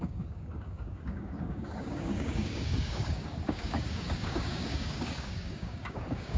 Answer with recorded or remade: remade